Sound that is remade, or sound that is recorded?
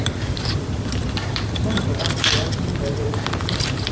remade